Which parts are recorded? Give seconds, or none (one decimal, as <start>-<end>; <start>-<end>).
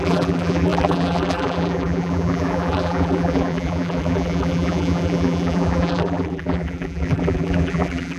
none